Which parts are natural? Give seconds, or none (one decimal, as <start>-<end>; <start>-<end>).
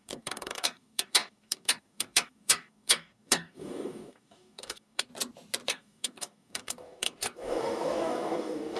5.1-5.7